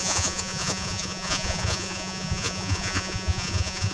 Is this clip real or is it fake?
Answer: fake